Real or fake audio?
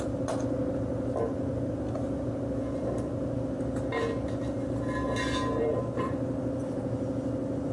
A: real